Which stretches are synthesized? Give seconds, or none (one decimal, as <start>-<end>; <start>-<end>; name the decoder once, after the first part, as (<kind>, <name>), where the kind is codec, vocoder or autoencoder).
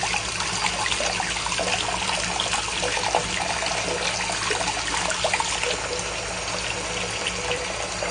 none